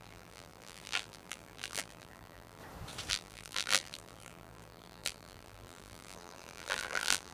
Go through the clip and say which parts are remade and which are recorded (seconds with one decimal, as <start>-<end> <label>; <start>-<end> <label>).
0.0-2.6 remade; 2.6-3.1 recorded; 3.1-7.3 remade